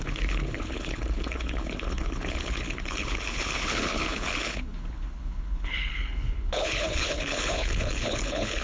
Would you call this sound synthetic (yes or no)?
yes